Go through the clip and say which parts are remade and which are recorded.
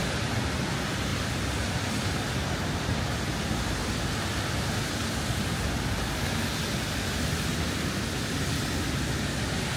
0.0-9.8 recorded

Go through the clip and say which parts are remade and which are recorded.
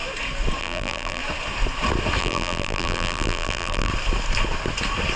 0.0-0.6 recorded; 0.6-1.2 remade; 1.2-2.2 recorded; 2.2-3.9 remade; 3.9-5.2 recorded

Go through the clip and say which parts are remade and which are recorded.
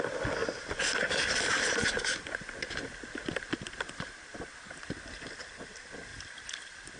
0.0-0.4 recorded; 0.4-4.6 remade; 4.6-7.0 recorded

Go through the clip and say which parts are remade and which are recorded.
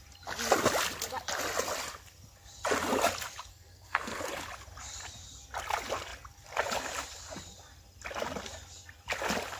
0.0-3.5 recorded; 3.5-4.2 remade; 4.2-9.6 recorded